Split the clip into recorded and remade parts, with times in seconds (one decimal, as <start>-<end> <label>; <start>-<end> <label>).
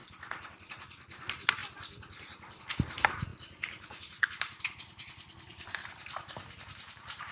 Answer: 0.0-3.3 recorded; 3.3-4.6 remade; 4.6-5.5 recorded; 5.5-7.3 remade